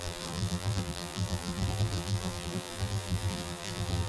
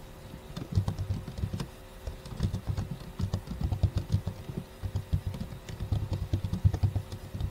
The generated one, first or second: first